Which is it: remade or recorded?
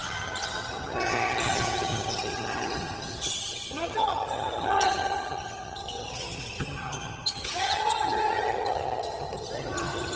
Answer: remade